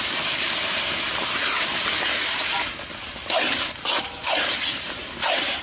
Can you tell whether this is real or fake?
fake